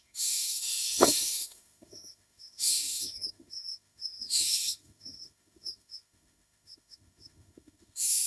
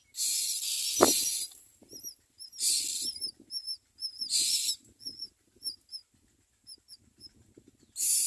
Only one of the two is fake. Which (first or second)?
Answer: first